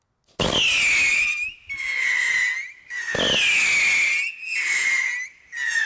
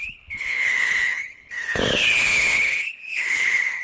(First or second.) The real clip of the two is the first